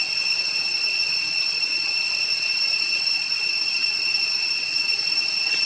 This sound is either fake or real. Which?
fake